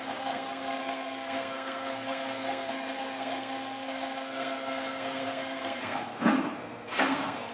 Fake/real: fake